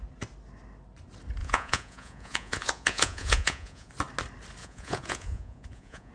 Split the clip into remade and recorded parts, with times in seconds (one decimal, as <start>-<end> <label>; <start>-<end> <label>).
0.0-1.4 recorded; 1.4-3.9 remade; 3.9-4.6 recorded; 4.6-6.1 remade